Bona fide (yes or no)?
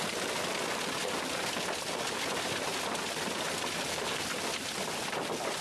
yes